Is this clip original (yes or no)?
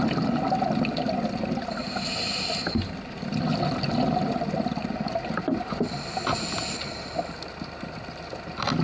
yes